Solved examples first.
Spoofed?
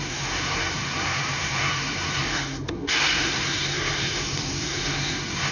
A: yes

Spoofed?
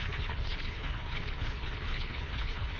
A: yes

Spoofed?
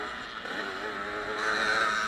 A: no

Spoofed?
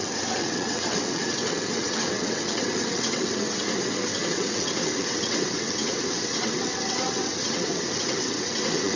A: yes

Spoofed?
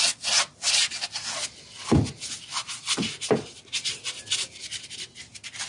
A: no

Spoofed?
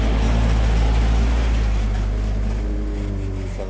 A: no